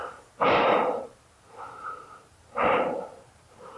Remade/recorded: remade